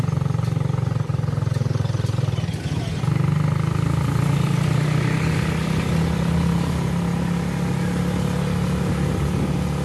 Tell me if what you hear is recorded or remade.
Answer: recorded